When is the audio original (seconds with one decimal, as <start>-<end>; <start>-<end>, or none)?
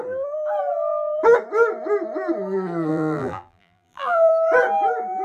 0.0-2.9; 4.3-5.2